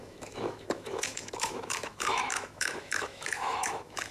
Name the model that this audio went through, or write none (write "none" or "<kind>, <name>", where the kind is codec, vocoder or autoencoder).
autoencoder, DAC-VAE